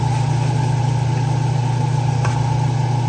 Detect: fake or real real